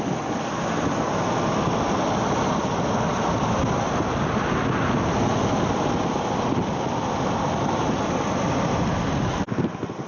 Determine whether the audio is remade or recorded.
recorded